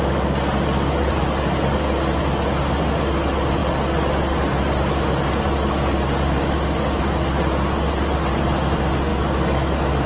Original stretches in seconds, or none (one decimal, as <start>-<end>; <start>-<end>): 0.0-9.1